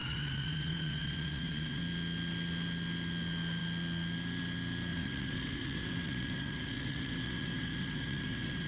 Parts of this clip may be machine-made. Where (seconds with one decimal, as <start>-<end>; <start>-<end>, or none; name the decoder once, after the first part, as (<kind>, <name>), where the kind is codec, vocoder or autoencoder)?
0.0-1.8 (vocoder, WaveNeXt); 4.9-8.7